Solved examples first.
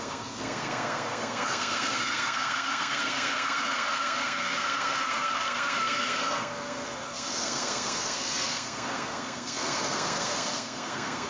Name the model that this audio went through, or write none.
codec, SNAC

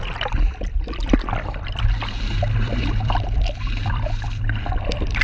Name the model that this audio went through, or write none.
vocoder, BigVGAN v2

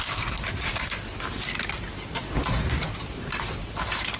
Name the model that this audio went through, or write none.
none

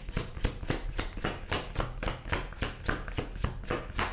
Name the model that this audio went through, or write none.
none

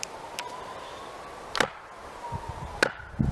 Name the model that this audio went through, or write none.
none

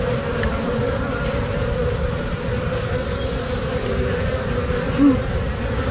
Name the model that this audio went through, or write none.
none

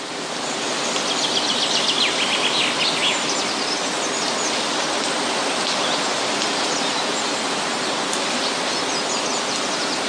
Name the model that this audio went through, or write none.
none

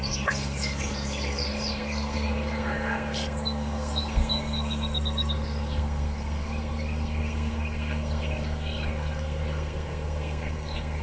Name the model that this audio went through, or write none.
codec, SNAC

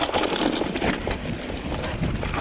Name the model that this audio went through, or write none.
none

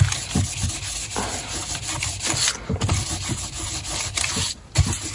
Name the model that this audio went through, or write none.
none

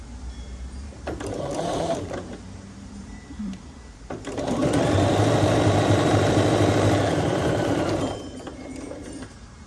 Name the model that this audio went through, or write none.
vocoder, BigVGAN v2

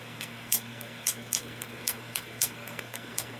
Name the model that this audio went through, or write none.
codec, SNAC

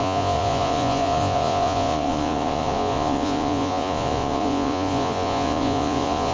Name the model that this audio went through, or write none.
vocoder, Vocos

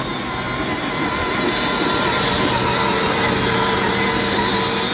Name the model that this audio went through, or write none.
none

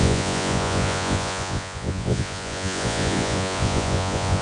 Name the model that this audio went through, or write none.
vocoder, Vocos